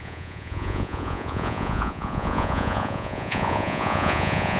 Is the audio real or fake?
fake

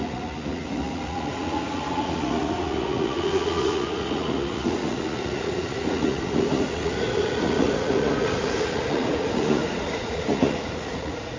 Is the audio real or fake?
fake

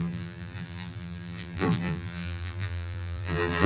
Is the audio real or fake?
fake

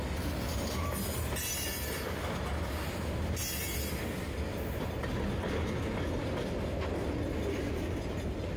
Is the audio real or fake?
real